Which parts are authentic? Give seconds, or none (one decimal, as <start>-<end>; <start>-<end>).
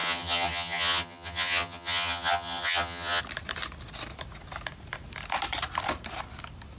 3.2-6.8